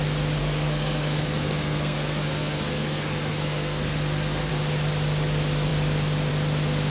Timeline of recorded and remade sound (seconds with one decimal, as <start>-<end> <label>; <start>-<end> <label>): 0.0-0.4 recorded; 0.4-4.5 remade; 4.5-6.9 recorded